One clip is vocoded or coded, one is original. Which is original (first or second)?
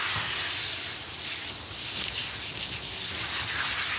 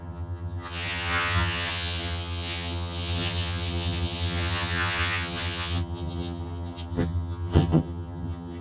first